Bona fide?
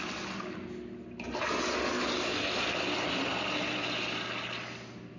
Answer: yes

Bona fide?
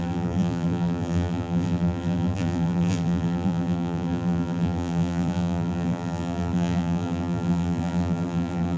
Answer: no